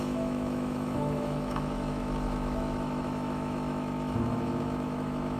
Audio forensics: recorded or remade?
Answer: remade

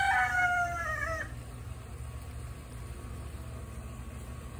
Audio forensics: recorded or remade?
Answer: recorded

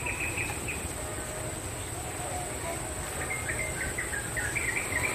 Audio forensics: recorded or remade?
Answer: recorded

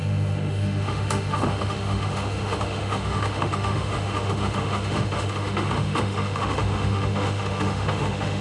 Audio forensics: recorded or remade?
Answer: remade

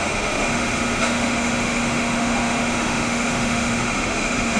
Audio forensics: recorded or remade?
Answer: remade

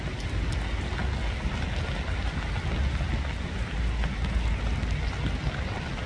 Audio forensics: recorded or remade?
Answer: recorded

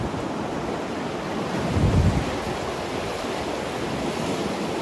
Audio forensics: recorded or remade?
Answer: recorded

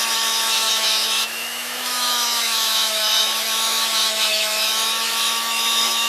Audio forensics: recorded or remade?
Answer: remade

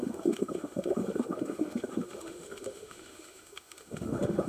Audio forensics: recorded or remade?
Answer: remade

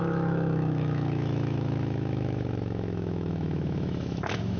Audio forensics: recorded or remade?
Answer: remade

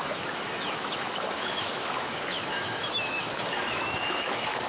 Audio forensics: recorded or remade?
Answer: remade